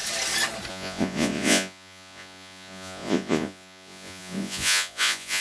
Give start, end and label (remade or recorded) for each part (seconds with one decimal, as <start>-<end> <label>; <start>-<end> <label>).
0.0-0.7 recorded; 0.7-5.4 remade